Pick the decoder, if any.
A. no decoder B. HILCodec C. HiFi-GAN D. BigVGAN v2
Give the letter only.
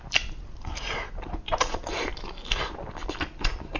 A